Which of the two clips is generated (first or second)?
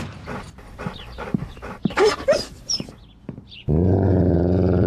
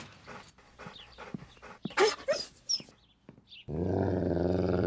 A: first